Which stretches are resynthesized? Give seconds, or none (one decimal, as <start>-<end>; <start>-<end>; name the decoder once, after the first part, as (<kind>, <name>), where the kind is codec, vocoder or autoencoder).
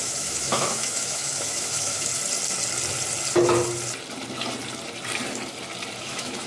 0.0-2.1 (autoencoder, DAC-VAE); 6.0-6.5